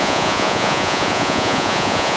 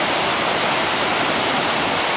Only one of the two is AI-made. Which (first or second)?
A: first